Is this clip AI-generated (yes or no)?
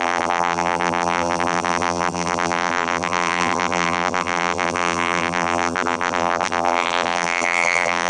yes